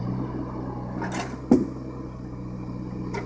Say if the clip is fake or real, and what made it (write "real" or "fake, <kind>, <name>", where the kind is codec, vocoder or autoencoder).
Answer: real